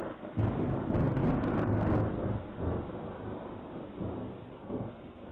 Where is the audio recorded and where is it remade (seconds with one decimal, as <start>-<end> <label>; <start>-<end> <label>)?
0.0-4.5 recorded; 4.5-5.3 remade